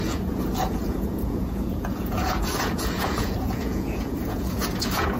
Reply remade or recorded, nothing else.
remade